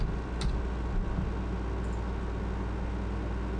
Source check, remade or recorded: recorded